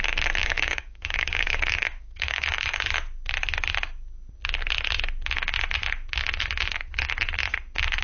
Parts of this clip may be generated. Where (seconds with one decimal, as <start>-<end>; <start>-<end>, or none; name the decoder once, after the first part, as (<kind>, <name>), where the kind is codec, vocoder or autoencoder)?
0.4-2.8 (codec, DAC); 6.4-7.1